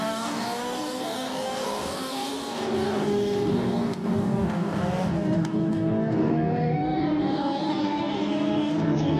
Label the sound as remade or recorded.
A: remade